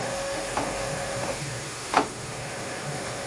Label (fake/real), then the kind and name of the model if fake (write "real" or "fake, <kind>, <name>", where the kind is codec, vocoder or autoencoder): fake, autoencoder, DAC-VAE